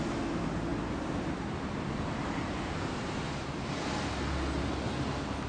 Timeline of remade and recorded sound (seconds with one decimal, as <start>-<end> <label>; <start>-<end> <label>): 0.0-0.7 recorded; 0.7-3.7 remade; 3.7-5.5 recorded

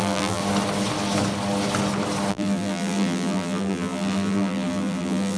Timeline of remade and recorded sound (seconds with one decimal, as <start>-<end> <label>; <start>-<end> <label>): 0.0-0.4 remade; 0.4-2.3 recorded; 2.3-5.4 remade

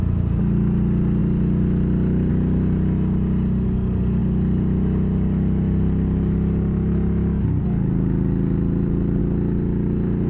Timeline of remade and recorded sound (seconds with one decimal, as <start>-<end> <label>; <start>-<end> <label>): 0.0-10.3 recorded

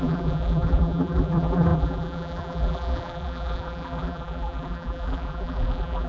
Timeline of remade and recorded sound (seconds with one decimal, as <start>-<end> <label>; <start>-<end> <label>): 0.0-6.1 remade

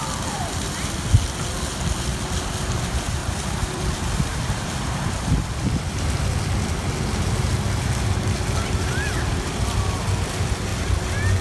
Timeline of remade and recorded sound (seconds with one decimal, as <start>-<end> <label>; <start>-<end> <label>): 0.0-3.2 recorded; 3.2-6.2 remade; 6.2-10.7 recorded; 10.7-11.4 remade